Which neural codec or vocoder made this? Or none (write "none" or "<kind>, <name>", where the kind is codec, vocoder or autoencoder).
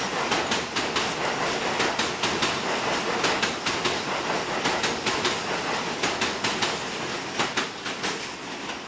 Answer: none